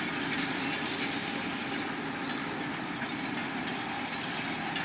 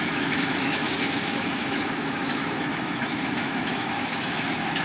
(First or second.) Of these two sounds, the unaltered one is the first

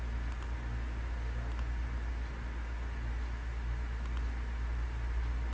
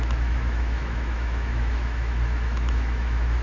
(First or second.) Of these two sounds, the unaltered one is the first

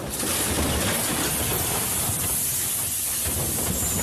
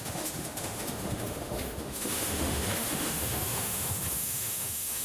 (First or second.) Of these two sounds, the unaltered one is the first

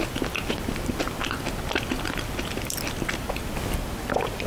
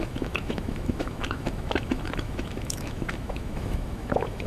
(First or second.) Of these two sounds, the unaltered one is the first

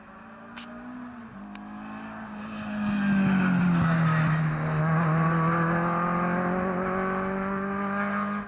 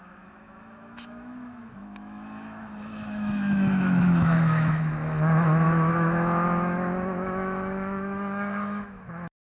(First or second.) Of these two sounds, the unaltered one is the first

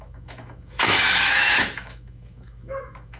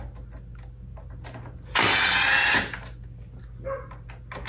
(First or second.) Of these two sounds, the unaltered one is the second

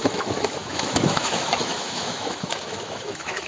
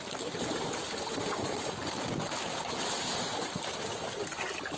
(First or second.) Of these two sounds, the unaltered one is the second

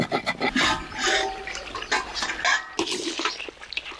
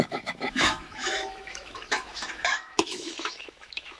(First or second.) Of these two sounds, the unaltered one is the first